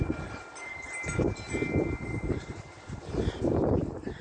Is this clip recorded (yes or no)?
yes